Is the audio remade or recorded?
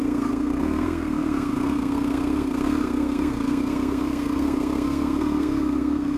remade